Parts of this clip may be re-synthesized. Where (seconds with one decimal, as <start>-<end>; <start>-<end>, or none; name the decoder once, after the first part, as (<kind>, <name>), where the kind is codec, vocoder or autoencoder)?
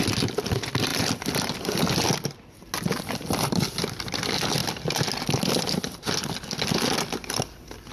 none